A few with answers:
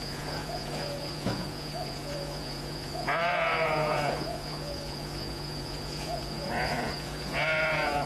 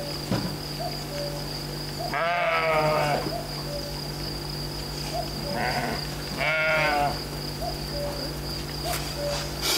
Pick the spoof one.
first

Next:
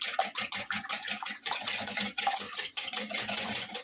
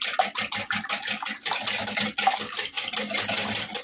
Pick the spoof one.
first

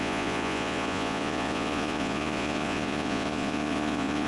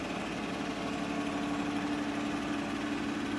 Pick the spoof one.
first